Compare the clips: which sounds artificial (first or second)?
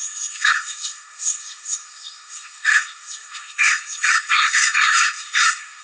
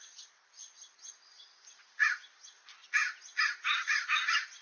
first